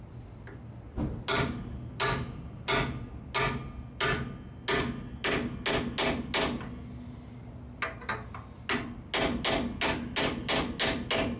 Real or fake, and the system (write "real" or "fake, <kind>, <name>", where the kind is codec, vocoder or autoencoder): real